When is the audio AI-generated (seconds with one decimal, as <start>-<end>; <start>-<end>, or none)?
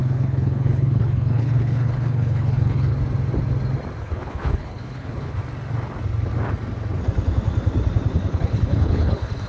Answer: 0.0-2.9; 4.0-5.4; 8.3-9.5